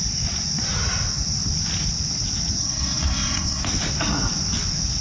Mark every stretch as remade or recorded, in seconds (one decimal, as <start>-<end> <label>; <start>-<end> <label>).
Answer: 0.0-2.6 recorded; 2.6-3.6 remade; 3.6-5.0 recorded